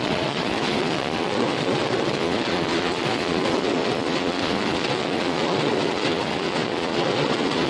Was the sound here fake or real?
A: fake